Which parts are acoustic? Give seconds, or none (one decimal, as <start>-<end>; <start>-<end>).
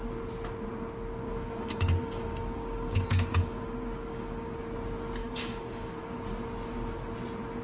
0.0-1.2; 4.6-5.2; 6.1-7.6